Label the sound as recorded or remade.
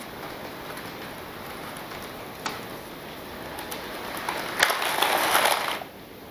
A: recorded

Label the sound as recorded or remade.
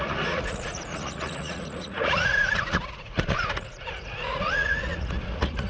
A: remade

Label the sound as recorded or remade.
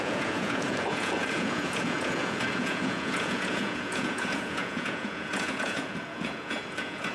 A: remade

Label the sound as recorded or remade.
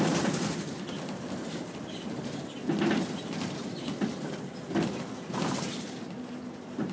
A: recorded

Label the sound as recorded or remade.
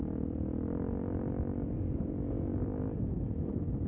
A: recorded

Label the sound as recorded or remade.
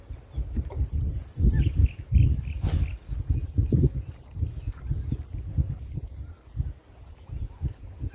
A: recorded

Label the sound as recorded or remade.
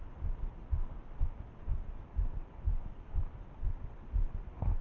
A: recorded